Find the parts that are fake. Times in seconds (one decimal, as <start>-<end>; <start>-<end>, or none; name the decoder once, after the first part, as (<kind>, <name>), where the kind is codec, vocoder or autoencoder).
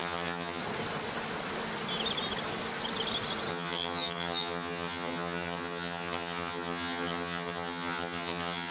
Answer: 0.0-0.6 (vocoder, HiFi-GAN); 3.5-8.7